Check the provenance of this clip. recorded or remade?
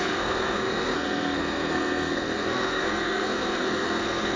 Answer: remade